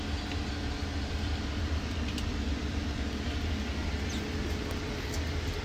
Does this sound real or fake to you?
real